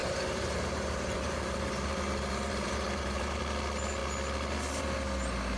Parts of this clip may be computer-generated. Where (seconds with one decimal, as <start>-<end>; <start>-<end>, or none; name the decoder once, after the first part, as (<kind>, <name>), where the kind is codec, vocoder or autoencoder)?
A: 0.0-3.4 (vocoder, BigVGAN v2)